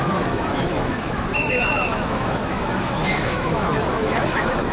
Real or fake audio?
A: fake